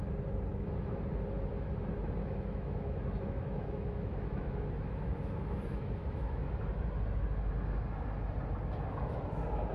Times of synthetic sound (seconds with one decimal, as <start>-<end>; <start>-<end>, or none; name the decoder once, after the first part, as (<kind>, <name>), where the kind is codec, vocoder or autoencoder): 2.2-6.5 (autoencoder, DAC-VAE)

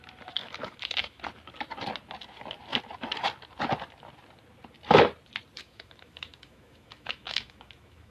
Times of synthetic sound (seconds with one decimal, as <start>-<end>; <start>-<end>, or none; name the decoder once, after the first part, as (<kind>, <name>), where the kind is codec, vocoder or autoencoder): 0.4-1.2 (autoencoder, DAC-VAE); 5.6-8.1

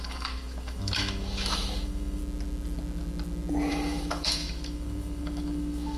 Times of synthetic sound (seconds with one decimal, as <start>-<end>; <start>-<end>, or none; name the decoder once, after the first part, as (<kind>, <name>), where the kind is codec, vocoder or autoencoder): 0.0-2.2 (autoencoder, DAC-VAE); 3.7-6.0

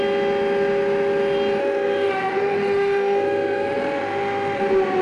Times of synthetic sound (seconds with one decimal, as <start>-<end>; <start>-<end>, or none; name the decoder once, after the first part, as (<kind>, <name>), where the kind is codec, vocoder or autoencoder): 1.6-4.6 (autoencoder, DAC-VAE)

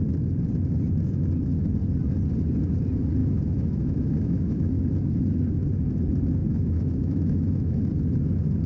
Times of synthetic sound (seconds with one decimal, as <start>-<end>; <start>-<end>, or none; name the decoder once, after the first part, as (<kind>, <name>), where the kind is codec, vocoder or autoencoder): 3.2-4.7 (autoencoder, DAC-VAE); 6.4-7.8